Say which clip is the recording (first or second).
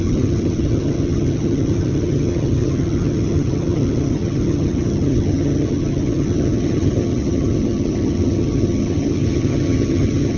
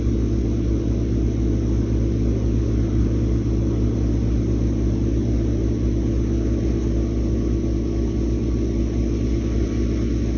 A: second